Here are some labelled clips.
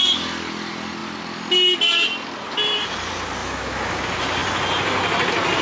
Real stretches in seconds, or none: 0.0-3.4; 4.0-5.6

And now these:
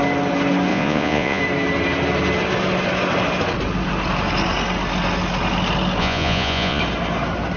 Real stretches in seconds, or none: 0.0-0.7; 1.4-6.0; 6.8-7.6

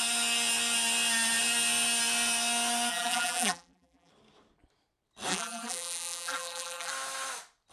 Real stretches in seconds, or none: 0.0-2.9; 4.1-5.3; 6.9-7.7

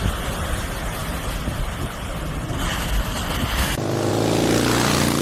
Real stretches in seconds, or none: 0.0-5.2

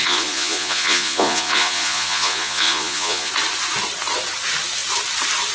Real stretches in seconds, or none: 3.3-5.5

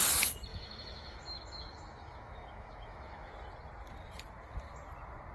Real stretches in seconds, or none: 0.0-0.5; 3.3-5.3